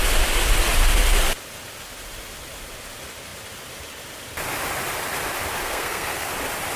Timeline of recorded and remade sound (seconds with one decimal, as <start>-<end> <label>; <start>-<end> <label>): 0.0-5.6 recorded; 5.6-6.3 remade; 6.3-6.8 recorded